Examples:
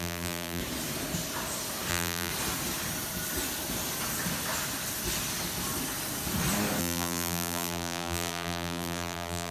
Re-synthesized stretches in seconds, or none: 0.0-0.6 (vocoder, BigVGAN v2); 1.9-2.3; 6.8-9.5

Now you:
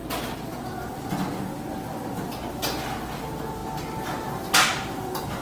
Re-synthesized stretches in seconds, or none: none

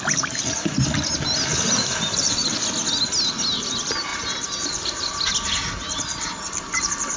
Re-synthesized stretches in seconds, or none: none

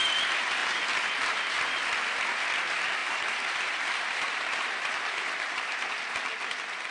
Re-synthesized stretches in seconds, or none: 3.0-5.5 (vocoder, BigVGAN v2)

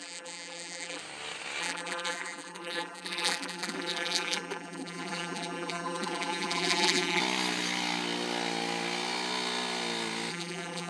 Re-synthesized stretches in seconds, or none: 0.0-1.0 (vocoder, BigVGAN v2); 1.6-7.2; 10.3-10.9

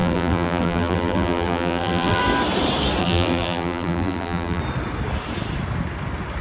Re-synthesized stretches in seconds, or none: 0.0-2.2 (vocoder, BigVGAN v2); 3.0-4.6

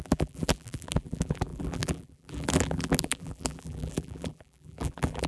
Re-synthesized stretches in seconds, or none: 0.0-5.3 (vocoder, BigVGAN v2)